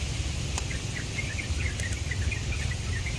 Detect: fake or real real